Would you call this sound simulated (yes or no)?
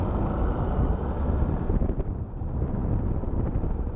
yes